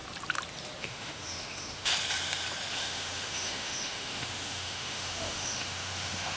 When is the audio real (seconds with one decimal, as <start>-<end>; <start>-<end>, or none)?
0.0-0.8; 1.9-2.7